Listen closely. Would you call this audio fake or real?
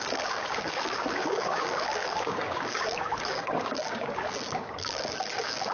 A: fake